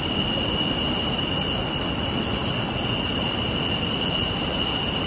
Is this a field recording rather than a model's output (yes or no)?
yes